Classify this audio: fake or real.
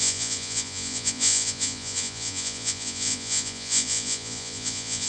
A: fake